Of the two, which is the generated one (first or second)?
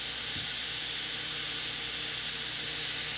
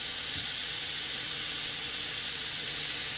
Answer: second